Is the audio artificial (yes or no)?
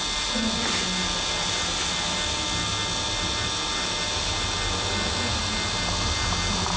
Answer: no